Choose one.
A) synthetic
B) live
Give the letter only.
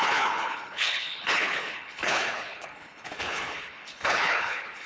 A